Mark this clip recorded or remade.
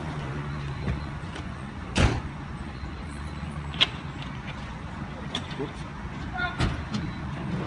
remade